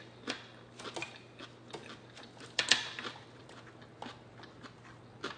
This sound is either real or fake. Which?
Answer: real